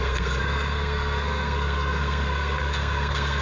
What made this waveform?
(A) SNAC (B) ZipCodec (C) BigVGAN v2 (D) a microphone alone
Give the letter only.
A